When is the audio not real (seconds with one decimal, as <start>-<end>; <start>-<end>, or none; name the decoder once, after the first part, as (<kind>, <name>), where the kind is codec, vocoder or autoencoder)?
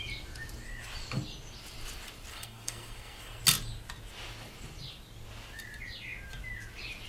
2.3-3.4 (codec, SNAC)